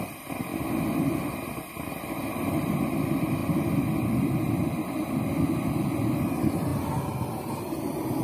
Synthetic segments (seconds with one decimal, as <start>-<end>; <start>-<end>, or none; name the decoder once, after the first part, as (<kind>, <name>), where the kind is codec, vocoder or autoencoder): 0.0-6.7 (vocoder, BigVGAN v2)